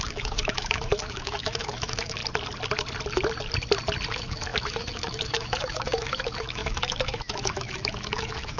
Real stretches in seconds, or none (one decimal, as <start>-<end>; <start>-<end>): 2.2-4.1